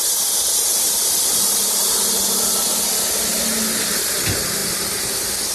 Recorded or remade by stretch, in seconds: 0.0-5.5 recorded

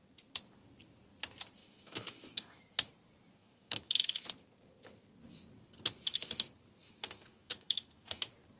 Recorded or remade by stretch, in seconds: 0.0-1.6 recorded; 1.6-2.6 remade; 2.6-3.4 recorded; 3.4-4.2 remade; 4.2-6.8 recorded; 6.8-8.2 remade; 8.2-8.6 recorded